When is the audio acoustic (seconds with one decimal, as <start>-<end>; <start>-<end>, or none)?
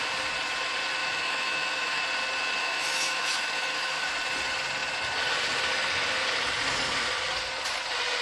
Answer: 0.0-1.0; 2.0-2.6; 4.1-8.2